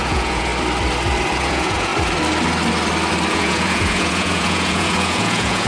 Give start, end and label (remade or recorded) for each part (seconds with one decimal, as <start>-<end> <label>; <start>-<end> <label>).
0.0-0.5 remade; 0.5-1.4 recorded; 1.4-1.9 remade; 1.9-3.3 recorded; 3.3-5.7 remade